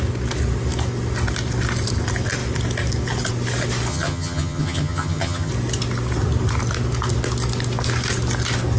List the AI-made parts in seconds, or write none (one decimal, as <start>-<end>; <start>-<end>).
3.9-5.5